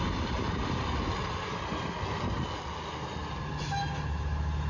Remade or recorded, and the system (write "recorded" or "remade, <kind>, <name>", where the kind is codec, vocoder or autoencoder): recorded